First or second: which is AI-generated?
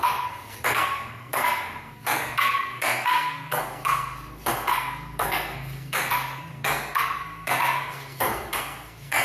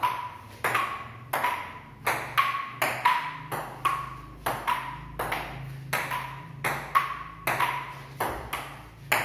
first